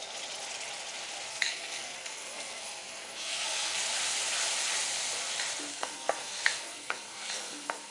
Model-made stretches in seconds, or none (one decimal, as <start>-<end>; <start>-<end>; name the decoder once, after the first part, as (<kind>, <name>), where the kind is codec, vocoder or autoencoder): 1.3-3.8 (codec, SNAC); 5.7-7.9